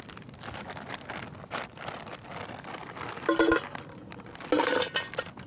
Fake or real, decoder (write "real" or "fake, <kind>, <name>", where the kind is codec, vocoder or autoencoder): real